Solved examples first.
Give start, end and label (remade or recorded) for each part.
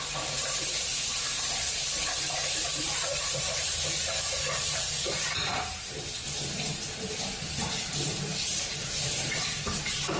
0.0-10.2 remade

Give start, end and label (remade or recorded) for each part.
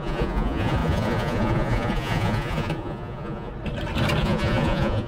0.0-3.5 remade; 3.5-4.2 recorded; 4.2-5.1 remade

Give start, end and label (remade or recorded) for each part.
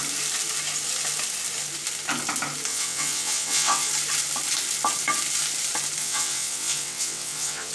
0.0-2.7 recorded; 2.7-3.9 remade; 3.9-6.0 recorded; 6.0-7.7 remade